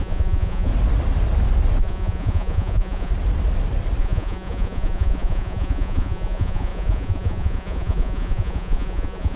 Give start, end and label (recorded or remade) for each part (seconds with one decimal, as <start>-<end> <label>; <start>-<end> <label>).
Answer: 0.0-0.7 remade; 0.7-1.8 recorded; 1.8-3.1 remade; 3.1-4.0 recorded; 4.0-9.4 remade